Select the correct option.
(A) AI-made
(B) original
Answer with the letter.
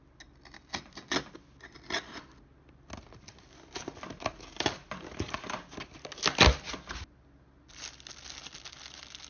B